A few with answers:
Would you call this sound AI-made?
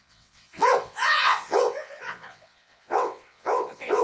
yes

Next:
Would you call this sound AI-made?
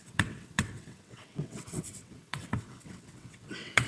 yes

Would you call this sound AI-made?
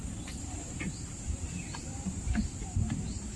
yes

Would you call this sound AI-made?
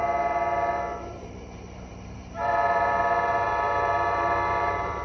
yes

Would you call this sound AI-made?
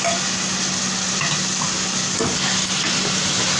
no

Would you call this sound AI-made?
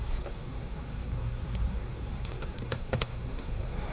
yes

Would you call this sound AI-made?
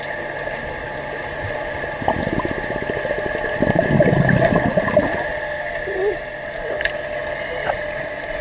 no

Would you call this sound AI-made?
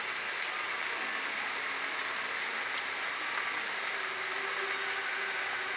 no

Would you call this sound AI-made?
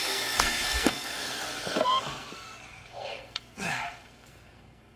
yes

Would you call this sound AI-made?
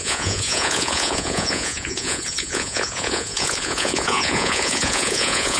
yes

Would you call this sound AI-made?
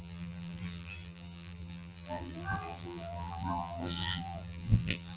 yes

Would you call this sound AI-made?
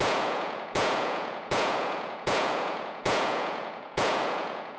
yes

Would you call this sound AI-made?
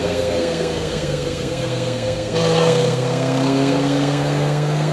yes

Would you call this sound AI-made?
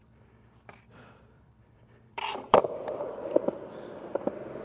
yes